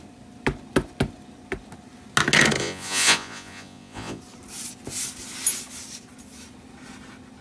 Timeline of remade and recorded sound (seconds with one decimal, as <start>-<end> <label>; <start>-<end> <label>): 0.0-2.6 recorded; 2.6-4.2 remade; 4.2-7.4 recorded